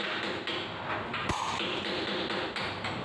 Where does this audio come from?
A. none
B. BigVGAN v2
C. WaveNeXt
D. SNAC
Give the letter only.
A